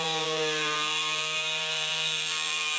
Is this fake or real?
fake